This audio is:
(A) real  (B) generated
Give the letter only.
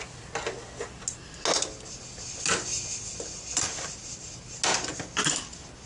A